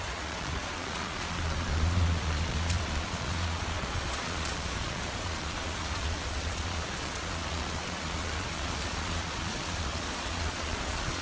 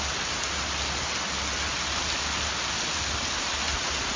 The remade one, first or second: first